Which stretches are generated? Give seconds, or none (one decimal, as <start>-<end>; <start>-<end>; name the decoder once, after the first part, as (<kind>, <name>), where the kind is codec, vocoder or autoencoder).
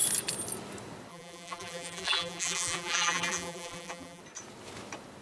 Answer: 1.1-4.2 (vocoder, BigVGAN v2)